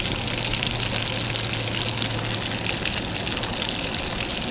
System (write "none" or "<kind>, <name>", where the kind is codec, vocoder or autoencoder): none